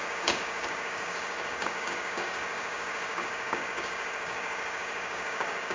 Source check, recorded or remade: remade